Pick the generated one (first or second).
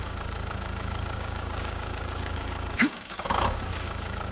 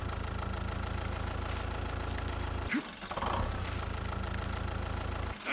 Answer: first